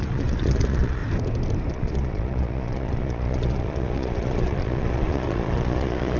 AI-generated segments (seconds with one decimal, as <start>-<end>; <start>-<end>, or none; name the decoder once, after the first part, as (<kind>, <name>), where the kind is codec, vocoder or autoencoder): 0.0-1.0 (vocoder, Vocos); 1.7-6.2